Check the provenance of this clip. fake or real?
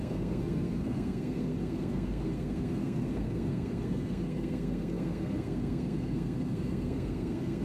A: fake